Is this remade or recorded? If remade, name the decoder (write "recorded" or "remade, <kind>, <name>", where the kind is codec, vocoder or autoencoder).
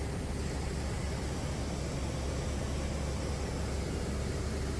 recorded